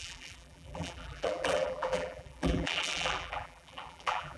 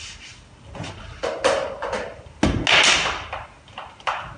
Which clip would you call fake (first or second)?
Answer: first